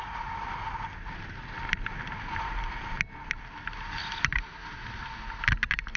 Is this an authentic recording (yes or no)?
yes